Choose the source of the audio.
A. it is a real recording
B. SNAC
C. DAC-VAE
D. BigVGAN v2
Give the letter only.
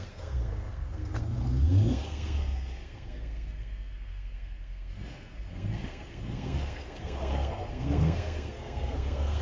B